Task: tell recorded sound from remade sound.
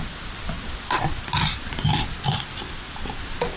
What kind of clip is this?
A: recorded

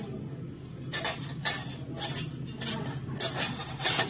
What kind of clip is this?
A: recorded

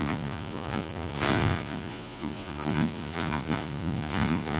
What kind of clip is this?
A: remade